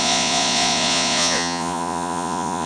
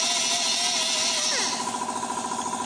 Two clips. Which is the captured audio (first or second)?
second